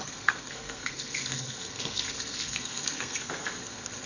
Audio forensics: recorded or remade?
remade